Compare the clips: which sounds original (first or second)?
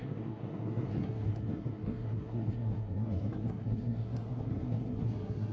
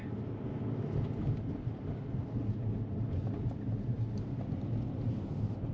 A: second